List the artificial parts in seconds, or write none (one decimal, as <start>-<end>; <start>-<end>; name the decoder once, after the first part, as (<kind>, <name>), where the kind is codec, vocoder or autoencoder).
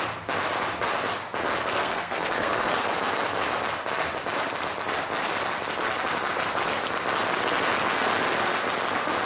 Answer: 1.8-2.8 (codec, SNAC)